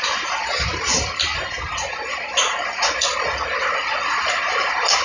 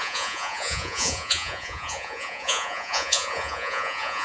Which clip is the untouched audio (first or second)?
first